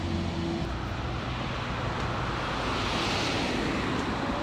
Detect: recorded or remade recorded